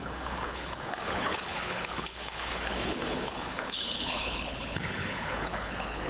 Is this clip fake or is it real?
fake